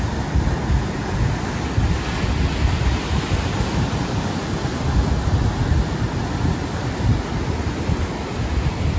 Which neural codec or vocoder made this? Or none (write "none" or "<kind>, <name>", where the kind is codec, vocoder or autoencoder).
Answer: none